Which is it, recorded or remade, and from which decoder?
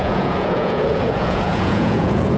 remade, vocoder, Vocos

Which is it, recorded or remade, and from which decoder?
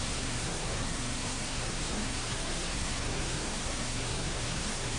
remade, codec, SNAC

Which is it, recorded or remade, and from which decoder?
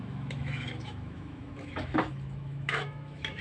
remade, autoencoder, DAC-VAE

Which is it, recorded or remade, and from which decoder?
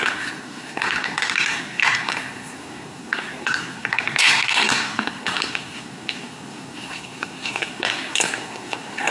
remade, codec, SNAC